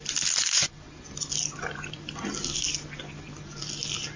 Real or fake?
real